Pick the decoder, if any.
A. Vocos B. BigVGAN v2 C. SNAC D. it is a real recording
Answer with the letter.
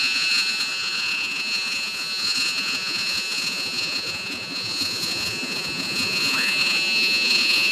A